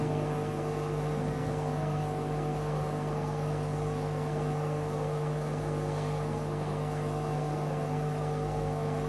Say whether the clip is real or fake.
fake